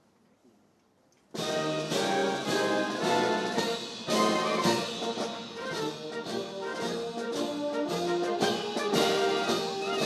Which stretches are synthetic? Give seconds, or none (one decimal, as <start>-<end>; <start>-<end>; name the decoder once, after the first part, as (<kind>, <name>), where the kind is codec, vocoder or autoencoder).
none